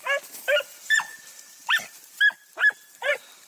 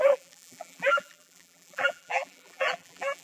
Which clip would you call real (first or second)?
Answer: first